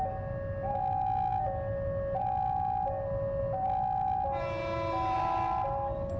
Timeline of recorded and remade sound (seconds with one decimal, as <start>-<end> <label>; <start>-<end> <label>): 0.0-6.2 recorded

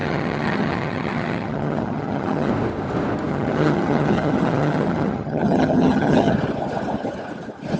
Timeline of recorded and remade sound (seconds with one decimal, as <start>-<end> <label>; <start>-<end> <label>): 0.0-2.5 remade; 2.5-3.3 recorded; 3.3-6.3 remade; 6.3-7.8 recorded

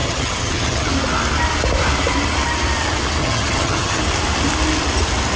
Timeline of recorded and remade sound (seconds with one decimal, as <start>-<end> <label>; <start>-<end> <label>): 0.0-0.9 remade; 0.9-3.2 recorded; 3.2-4.0 remade; 4.0-5.4 recorded